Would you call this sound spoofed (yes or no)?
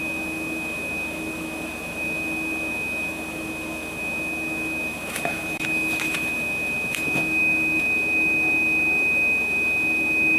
yes